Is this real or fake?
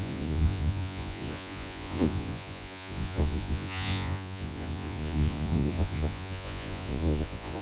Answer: fake